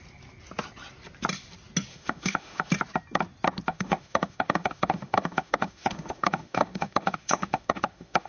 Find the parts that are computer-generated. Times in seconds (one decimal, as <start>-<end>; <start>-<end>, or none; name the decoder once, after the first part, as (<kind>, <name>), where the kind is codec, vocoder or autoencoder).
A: 1.9-2.7 (autoencoder, DAC-VAE); 3.7-8.3